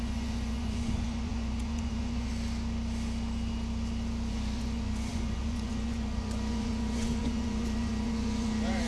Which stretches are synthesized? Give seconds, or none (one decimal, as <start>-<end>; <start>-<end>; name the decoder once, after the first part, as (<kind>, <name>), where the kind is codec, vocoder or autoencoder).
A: 0.0-2.3 (vocoder, Vocos); 4.3-8.9